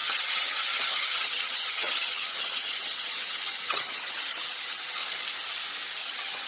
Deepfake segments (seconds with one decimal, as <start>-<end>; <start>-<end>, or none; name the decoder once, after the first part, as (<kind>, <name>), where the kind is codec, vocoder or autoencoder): 0.0-5.0 (vocoder, HiFi-GAN); 6.0-6.5